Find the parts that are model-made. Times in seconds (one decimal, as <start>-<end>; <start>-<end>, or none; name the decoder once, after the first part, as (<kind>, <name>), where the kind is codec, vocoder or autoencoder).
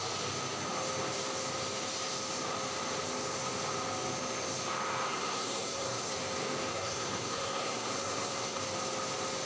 5.1-6.1 (codec, SNAC); 6.7-8.6